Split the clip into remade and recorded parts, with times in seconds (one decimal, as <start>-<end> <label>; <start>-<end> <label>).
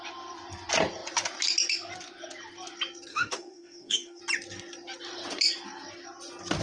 0.0-3.1 recorded; 3.1-4.2 remade; 4.2-6.6 recorded